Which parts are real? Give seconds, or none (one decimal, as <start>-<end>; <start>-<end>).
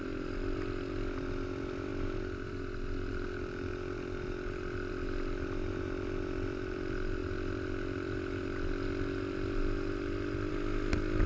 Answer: 0.0-11.3